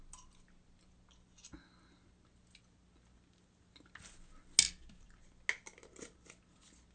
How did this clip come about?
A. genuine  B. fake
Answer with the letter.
A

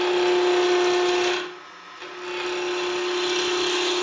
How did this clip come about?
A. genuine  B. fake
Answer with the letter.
A